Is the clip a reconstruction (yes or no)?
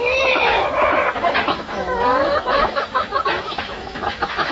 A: yes